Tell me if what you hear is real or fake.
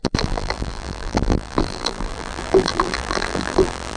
fake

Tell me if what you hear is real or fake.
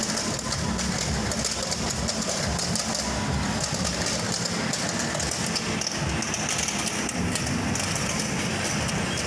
real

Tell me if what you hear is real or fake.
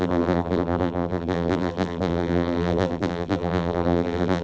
fake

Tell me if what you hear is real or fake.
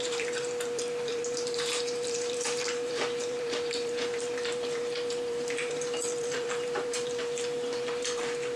fake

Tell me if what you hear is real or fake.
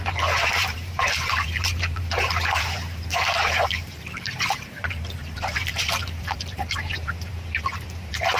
fake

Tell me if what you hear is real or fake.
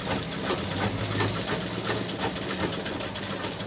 real